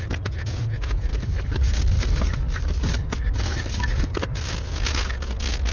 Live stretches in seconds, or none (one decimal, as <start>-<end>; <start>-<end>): 0.0-1.1; 4.5-5.7